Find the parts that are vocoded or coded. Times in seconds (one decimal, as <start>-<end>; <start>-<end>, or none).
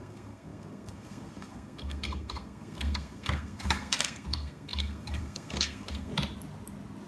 0.0-6.1